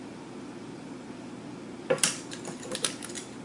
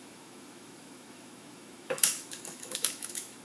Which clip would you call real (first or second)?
first